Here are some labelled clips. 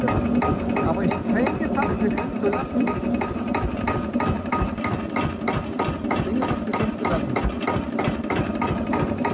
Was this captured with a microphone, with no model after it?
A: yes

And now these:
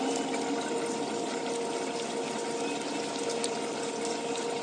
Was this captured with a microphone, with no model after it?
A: yes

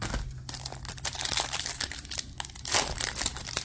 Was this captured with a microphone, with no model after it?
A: yes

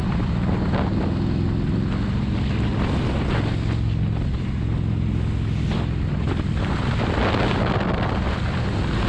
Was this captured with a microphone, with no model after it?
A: yes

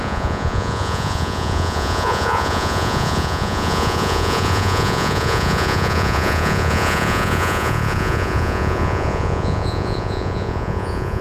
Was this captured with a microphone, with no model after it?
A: no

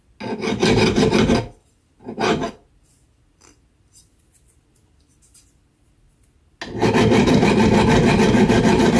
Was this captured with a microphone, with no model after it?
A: yes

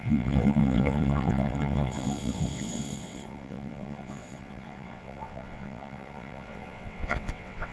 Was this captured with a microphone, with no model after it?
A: no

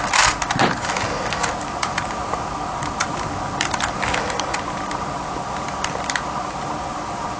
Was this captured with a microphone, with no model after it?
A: yes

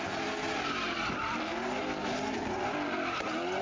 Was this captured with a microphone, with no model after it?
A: yes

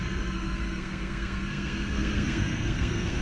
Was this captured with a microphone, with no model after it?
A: no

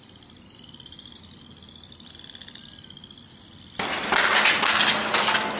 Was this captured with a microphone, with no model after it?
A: yes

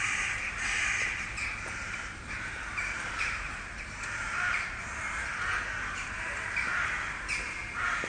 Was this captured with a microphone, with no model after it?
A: no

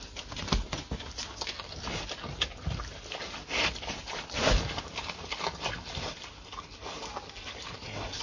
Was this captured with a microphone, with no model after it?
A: yes